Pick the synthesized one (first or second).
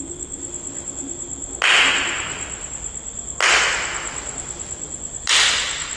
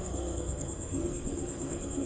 second